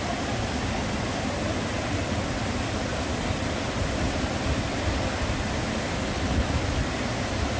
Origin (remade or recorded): recorded